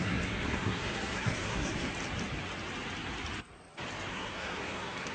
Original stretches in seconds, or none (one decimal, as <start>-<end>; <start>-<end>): 1.9-4.1